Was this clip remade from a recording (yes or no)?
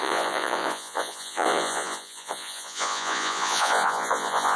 yes